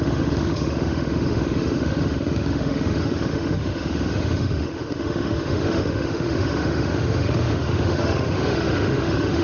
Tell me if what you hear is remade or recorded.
remade